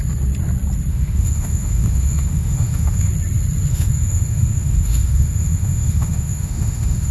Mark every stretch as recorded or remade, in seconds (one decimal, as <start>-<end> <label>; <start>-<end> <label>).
0.0-0.9 recorded; 0.9-3.1 remade; 3.1-3.7 recorded; 3.7-7.1 remade